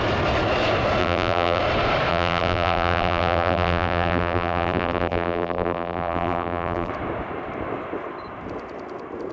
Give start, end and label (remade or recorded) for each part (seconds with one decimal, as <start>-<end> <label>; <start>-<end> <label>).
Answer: 0.0-1.0 recorded; 1.0-1.6 remade; 1.6-2.1 recorded; 2.1-6.9 remade; 6.9-9.3 recorded